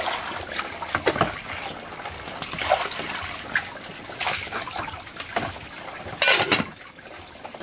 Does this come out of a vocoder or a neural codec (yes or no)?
no